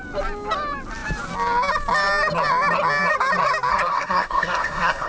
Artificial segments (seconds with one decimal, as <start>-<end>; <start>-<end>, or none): 3.7-5.1

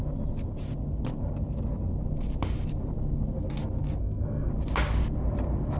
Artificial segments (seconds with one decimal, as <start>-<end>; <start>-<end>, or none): 4.0-4.5

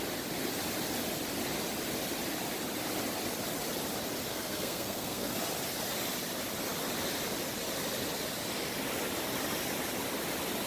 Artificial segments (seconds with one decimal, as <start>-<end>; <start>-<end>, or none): 4.3-5.4

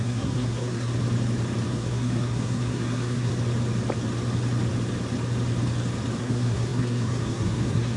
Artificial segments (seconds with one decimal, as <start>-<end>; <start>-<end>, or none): 0.0-0.9; 1.7-3.3; 6.2-8.0

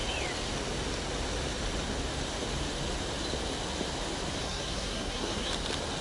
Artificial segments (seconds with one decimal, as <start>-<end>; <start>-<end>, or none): 4.4-5.5

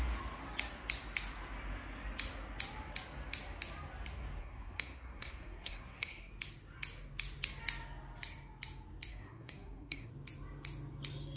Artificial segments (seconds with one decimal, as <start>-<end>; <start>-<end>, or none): 4.4-6.3; 9.1-10.1